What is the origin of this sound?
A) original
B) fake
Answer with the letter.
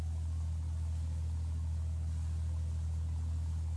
A